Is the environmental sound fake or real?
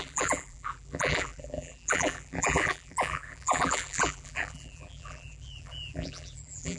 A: fake